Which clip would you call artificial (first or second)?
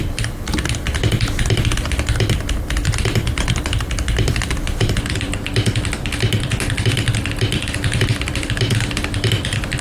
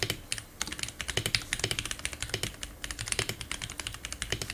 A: first